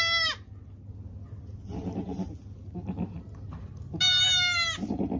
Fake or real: real